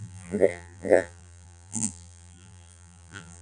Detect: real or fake fake